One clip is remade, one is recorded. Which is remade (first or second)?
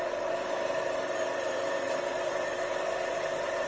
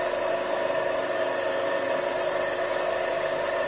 first